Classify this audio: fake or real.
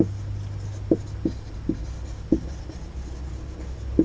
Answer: real